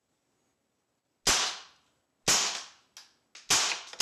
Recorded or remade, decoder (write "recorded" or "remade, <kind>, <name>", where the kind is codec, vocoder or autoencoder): recorded